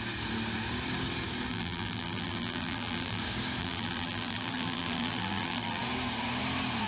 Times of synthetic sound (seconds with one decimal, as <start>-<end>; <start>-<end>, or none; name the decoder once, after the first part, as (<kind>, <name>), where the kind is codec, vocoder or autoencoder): 1.5-3.2 (vocoder, BigVGAN v2); 3.6-5.8